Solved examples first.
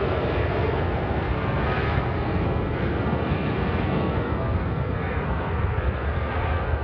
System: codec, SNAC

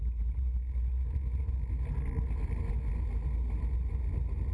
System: none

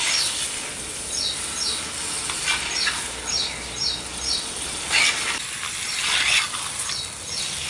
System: none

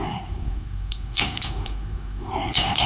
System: codec, SNAC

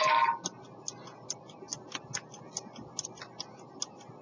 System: none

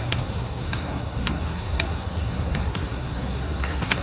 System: codec, SNAC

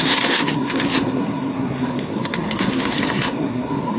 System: codec, SNAC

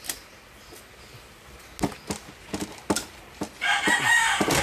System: none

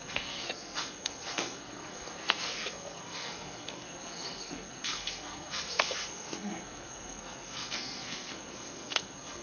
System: codec, SNAC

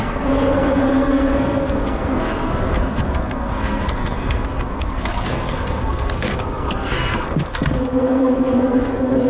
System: codec, SNAC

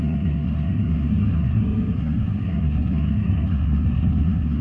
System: codec, SNAC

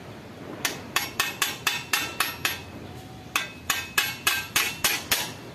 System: none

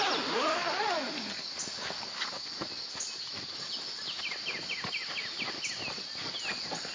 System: none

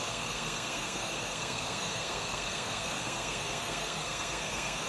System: codec, SNAC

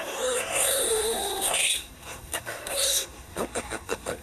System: codec, SNAC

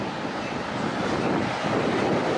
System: none